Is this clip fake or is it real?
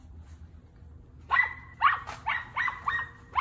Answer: real